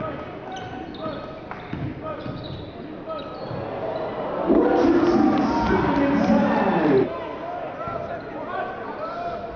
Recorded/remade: recorded